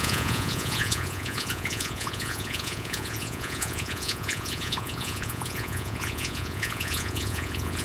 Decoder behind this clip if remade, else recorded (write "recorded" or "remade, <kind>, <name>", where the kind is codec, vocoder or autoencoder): remade, vocoder, Vocos